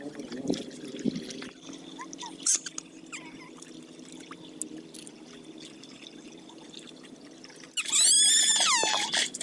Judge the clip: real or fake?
real